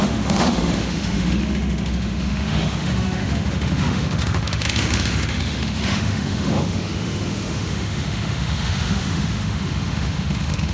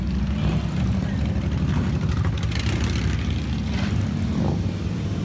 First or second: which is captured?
second